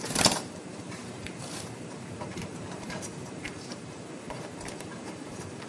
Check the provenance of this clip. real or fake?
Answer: fake